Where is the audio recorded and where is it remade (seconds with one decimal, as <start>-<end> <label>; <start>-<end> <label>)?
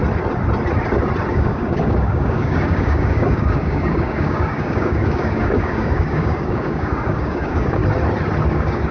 0.0-1.3 recorded; 1.3-7.8 remade; 7.8-8.5 recorded; 8.5-8.9 remade